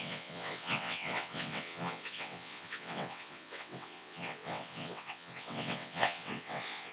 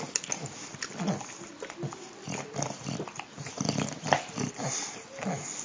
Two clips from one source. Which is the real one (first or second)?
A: second